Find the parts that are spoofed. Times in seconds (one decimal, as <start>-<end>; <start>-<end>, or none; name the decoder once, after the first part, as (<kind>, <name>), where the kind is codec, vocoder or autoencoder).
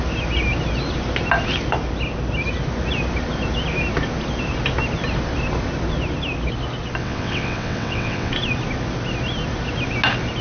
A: 7.0-8.3 (vocoder, WaveNeXt)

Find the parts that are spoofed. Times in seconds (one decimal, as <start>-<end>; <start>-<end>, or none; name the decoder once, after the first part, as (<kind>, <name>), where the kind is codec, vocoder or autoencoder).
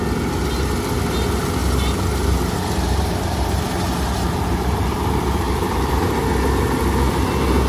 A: 1.6-6.1 (vocoder, BigVGAN v2)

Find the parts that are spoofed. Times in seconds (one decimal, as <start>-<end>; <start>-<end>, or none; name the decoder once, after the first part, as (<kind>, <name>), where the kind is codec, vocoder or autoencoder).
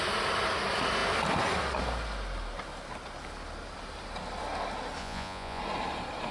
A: 5.0-5.6 (vocoder, Vocos)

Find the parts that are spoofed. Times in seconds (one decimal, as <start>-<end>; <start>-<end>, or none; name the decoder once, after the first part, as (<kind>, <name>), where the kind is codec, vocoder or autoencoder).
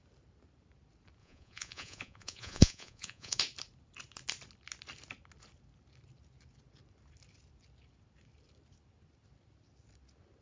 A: 1.2-3.4 (vocoder, Vocos)